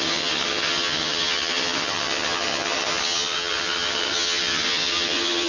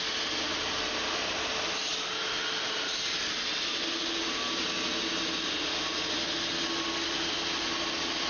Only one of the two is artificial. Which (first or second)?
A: first